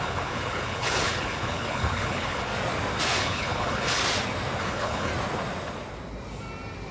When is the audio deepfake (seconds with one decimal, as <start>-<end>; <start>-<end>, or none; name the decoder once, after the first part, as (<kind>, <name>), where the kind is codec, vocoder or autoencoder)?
0.0-2.5 (codec, HILCodec); 3.2-4.0; 4.6-5.1